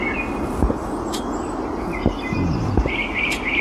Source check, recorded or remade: recorded